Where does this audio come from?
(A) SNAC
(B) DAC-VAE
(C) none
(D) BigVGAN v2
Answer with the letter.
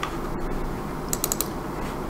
C